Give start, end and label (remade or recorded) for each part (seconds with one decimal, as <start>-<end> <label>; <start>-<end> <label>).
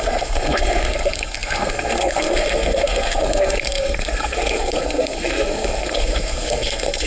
0.0-7.1 remade